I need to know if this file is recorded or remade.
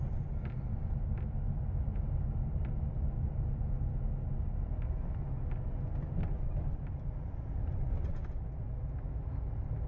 recorded